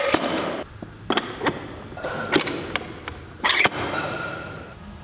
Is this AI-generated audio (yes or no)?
no